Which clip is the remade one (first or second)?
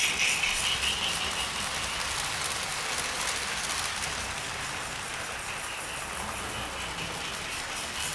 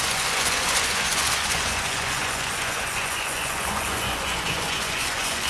second